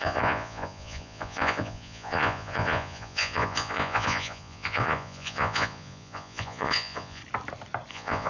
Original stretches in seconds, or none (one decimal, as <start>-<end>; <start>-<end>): 7.2-7.9